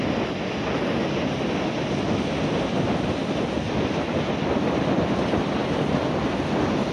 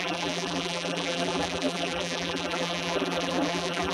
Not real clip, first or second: second